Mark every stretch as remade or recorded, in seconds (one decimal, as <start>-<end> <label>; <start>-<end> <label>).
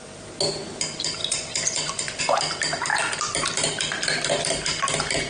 0.0-1.2 recorded; 1.2-2.2 remade; 2.2-5.3 recorded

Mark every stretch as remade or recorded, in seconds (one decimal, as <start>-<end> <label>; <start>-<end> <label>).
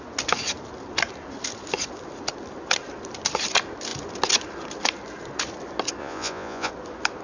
0.0-6.0 recorded; 6.0-6.7 remade; 6.7-7.2 recorded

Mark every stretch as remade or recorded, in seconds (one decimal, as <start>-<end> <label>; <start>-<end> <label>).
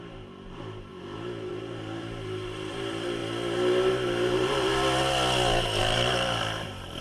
0.0-0.9 remade; 0.9-1.5 recorded; 1.5-3.2 remade; 3.2-3.9 recorded; 3.9-4.7 remade; 4.7-5.8 recorded; 5.8-7.0 remade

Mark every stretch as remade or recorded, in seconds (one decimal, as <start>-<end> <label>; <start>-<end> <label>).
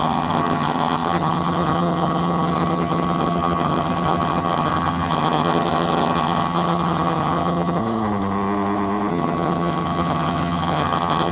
0.0-7.8 remade; 7.8-9.1 recorded; 9.1-11.3 remade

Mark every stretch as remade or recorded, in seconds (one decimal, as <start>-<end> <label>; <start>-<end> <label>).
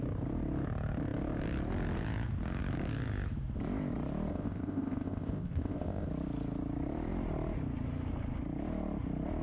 0.0-4.3 recorded; 4.3-6.1 remade; 6.1-9.4 recorded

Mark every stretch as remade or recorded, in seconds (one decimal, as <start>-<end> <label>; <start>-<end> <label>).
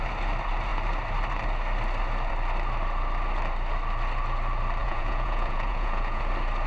0.0-4.8 recorded; 4.8-6.2 remade; 6.2-6.7 recorded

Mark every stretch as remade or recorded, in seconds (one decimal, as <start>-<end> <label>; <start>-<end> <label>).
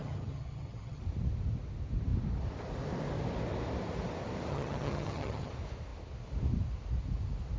0.0-1.0 remade; 1.0-4.5 recorded; 4.5-5.5 remade; 5.5-7.6 recorded